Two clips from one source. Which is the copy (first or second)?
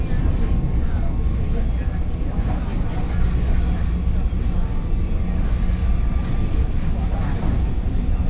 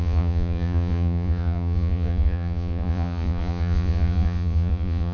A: second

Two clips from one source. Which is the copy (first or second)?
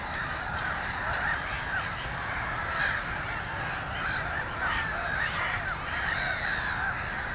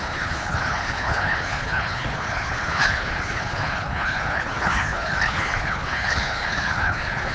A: second